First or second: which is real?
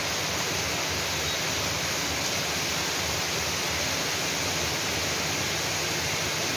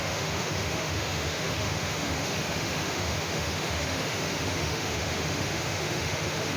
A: first